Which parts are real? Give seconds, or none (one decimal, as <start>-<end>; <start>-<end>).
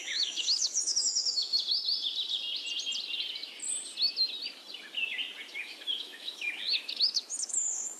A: 1.5-5.6